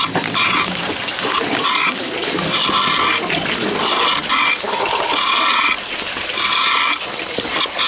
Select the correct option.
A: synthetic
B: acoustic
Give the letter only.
B